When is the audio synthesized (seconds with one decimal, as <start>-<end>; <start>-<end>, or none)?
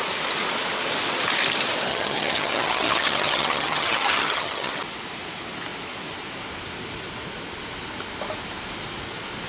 1.9-4.7